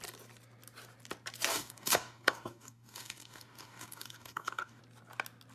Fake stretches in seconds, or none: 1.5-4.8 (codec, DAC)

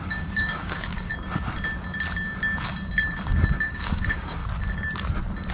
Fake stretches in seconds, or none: 0.0-1.1 (codec, DAC); 3.6-4.4

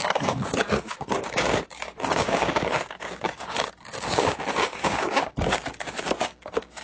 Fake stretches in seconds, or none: 0.0-6.8 (codec, DAC)

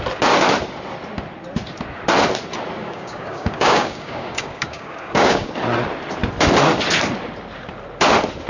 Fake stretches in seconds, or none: 2.8-5.5 (codec, DAC)

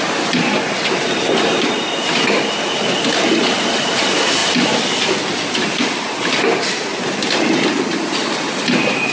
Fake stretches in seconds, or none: none

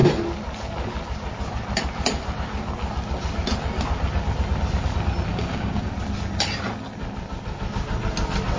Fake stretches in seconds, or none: 5.3-5.9 (codec, DAC)